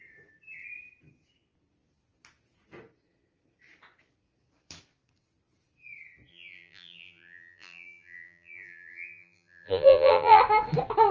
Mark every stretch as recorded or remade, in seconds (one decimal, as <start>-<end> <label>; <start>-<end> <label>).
0.0-6.3 recorded; 6.3-10.4 remade; 10.4-11.1 recorded